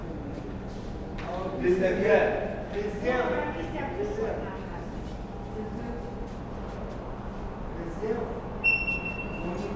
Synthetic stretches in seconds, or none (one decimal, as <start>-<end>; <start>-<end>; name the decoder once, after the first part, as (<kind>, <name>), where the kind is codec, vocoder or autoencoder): 0.0-2.2 (vocoder, BigVGAN v2)